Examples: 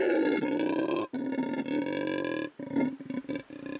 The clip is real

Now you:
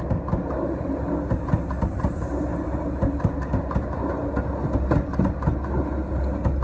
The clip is real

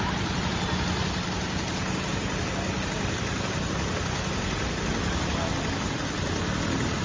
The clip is real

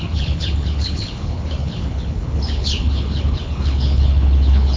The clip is fake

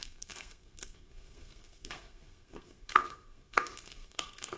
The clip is fake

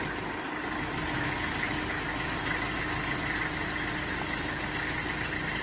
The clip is real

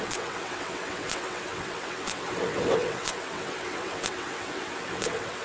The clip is fake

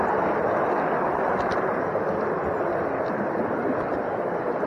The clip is real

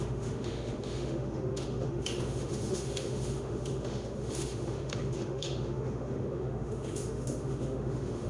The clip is fake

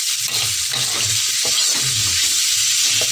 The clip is real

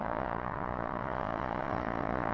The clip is fake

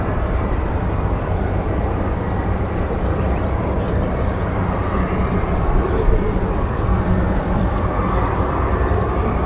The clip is fake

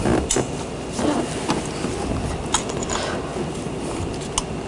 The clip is real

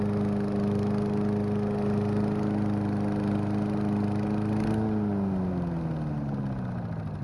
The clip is real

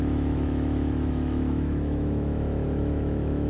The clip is fake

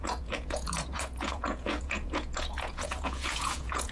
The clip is fake